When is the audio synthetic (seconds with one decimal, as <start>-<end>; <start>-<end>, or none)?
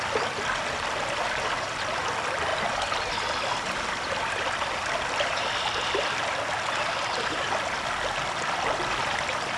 none